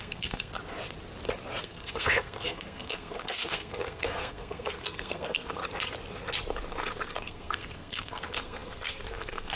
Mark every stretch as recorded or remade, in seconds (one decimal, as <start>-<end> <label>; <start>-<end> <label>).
0.0-0.5 remade; 0.5-1.6 recorded; 1.6-5.6 remade; 5.6-6.8 recorded; 6.8-9.6 remade